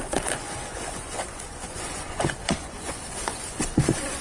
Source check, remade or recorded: remade